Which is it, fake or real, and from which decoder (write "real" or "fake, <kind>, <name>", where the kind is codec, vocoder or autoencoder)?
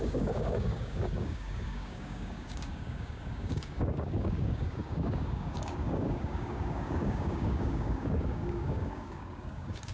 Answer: fake, codec, DAC